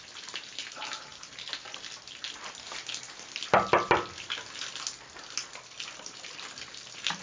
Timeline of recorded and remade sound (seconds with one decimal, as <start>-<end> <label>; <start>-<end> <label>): 0.0-7.2 recorded

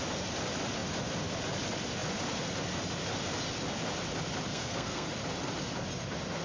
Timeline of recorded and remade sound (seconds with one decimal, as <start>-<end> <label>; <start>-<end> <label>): 0.0-4.5 recorded; 4.5-5.1 remade; 5.1-6.4 recorded

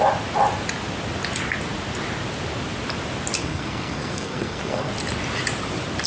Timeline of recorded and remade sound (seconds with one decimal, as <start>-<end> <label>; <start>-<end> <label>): 0.0-3.4 recorded; 3.4-4.9 remade; 4.9-6.1 recorded

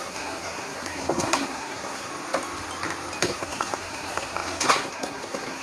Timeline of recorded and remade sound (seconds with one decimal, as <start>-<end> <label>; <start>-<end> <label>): 0.0-2.1 remade; 2.1-3.2 recorded; 3.2-5.6 remade

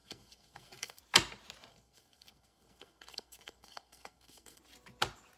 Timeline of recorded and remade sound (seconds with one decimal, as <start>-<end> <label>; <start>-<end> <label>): 0.0-1.0 remade; 1.0-1.7 recorded; 1.7-4.6 remade; 4.6-5.4 recorded